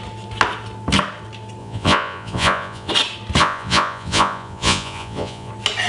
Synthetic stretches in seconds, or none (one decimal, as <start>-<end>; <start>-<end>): 1.6-2.9; 3.4-5.5